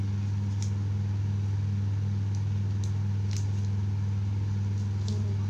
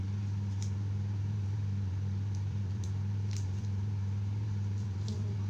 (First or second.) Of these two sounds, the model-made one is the second